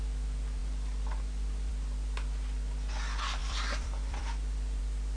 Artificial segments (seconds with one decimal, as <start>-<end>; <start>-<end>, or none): 0.6-1.7; 3.4-4.8